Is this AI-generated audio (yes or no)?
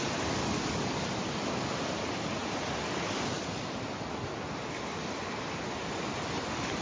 no